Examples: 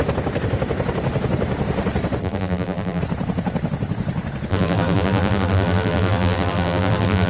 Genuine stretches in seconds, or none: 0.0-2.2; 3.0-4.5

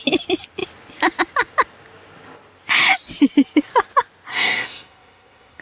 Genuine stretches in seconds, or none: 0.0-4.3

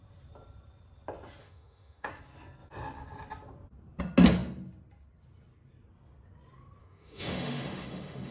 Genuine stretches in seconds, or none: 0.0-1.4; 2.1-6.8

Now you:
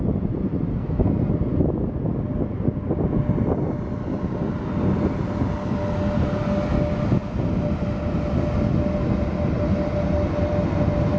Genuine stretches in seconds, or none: 0.0-0.7; 1.3-11.2

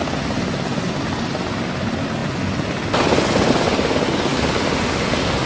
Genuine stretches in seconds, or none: 0.0-5.5

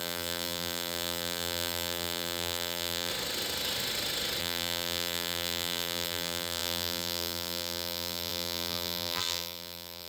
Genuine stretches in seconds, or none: 3.1-4.4

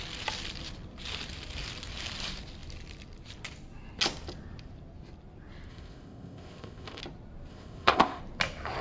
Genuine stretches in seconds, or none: 0.0-5.7; 7.0-7.5; 8.2-8.8

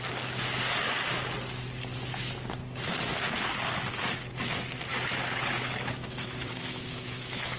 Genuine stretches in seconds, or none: 0.0-4.9